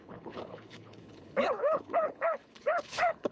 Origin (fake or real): fake